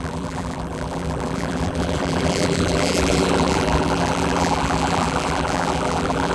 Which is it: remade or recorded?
remade